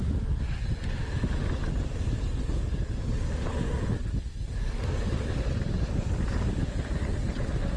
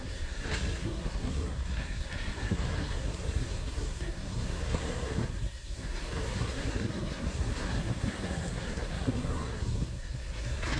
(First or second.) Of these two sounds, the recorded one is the first